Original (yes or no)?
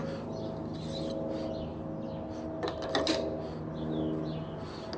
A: yes